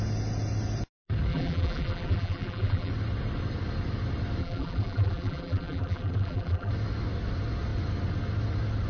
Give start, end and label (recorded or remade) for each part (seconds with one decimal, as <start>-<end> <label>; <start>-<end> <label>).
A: 0.0-1.3 recorded; 1.3-2.9 remade; 2.9-4.4 recorded; 4.4-6.7 remade; 6.7-8.9 recorded